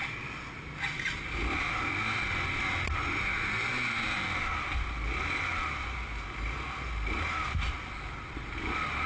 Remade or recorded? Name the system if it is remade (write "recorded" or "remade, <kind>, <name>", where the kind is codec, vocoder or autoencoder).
recorded